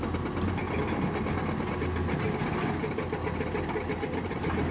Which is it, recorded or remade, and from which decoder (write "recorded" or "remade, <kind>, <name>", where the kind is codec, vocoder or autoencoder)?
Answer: recorded